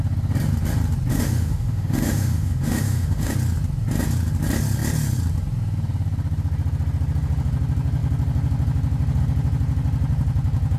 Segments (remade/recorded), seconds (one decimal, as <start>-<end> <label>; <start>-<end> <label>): 0.0-1.1 recorded; 1.1-3.3 remade; 3.3-10.8 recorded